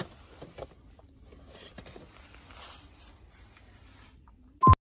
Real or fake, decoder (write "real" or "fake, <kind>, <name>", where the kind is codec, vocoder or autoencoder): real